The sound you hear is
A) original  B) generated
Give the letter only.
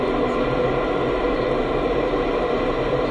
A